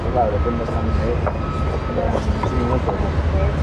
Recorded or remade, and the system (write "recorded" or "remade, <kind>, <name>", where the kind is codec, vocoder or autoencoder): recorded